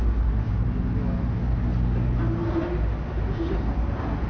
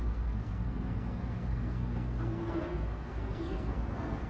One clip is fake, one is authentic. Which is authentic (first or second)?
first